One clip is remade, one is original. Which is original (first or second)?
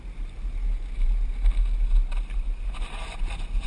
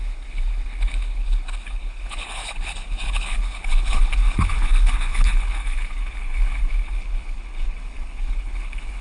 first